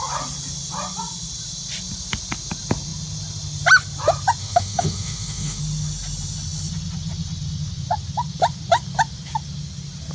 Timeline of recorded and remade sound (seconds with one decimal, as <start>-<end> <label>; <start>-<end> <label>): 0.0-4.4 recorded; 4.4-5.6 remade; 5.6-10.1 recorded